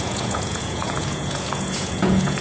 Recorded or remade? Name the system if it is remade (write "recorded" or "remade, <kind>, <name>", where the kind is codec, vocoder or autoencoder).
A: remade, vocoder, Vocos